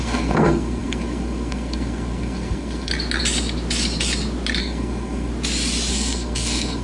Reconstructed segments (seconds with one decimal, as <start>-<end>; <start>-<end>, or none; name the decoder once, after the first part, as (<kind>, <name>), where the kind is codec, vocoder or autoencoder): 0.0-2.9 (codec, SNAC); 4.6-5.3; 5.9-6.8